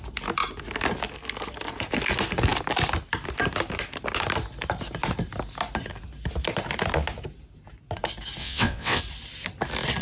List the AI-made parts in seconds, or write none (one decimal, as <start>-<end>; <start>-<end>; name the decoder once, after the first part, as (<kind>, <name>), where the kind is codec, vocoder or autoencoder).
8.4-9.0 (vocoder, WaveNeXt)